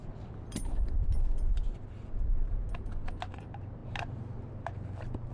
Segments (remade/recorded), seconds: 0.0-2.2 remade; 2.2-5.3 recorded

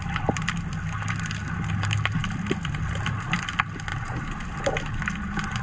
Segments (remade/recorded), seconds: 0.0-3.9 recorded; 3.9-4.6 remade; 4.6-5.6 recorded

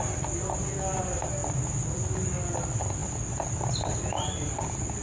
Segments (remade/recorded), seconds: 0.0-1.4 remade; 1.4-2.5 recorded; 2.5-3.0 remade; 3.0-3.7 recorded; 3.7-5.0 remade

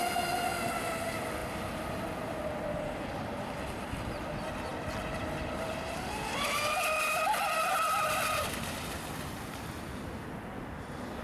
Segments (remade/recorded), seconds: 0.0-11.2 recorded

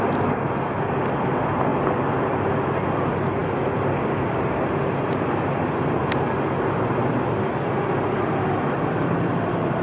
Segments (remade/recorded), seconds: 0.0-9.8 recorded

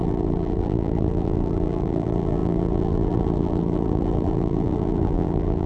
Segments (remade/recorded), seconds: 0.0-5.7 remade